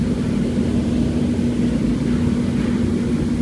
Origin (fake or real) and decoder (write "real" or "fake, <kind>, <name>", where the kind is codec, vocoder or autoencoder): real